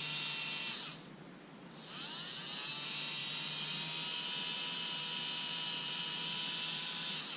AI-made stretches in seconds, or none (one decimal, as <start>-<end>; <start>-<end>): none